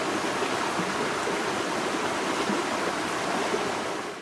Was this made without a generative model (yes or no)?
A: yes